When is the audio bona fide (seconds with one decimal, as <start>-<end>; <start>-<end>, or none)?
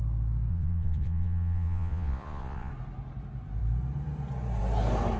0.0-0.5; 2.7-5.2